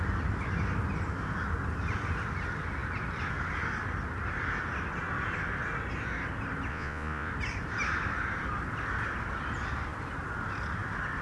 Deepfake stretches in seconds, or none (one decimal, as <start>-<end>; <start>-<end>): 6.7-7.3